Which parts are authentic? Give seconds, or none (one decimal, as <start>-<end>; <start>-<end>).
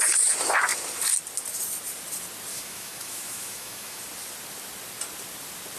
0.0-2.5; 4.0-5.8